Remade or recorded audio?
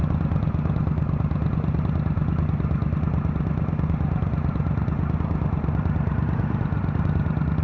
recorded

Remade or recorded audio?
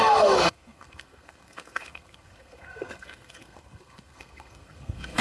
remade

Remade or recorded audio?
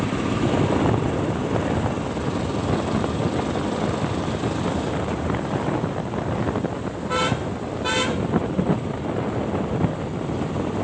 recorded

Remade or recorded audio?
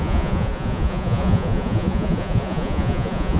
remade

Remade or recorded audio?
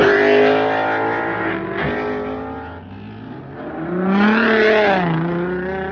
recorded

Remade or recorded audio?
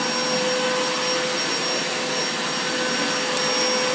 recorded